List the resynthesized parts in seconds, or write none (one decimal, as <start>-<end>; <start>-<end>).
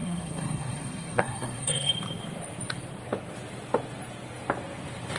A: 0.0-1.9